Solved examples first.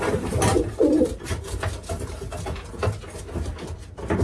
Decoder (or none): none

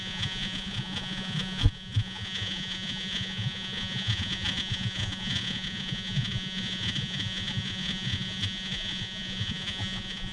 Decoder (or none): vocoder, Vocos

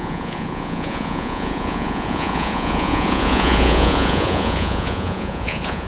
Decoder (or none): vocoder, Vocos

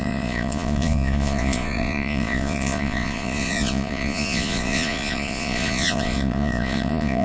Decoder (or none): vocoder, Vocos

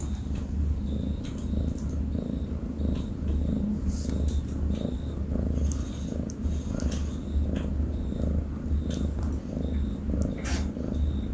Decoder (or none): none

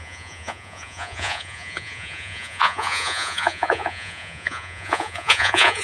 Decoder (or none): vocoder, Vocos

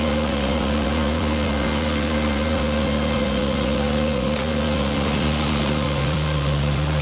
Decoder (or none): vocoder, Vocos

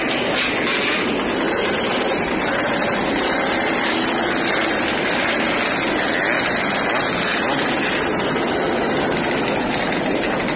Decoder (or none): none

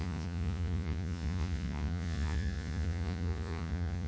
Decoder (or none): vocoder, Vocos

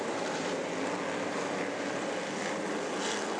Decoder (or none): none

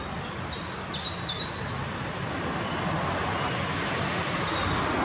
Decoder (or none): none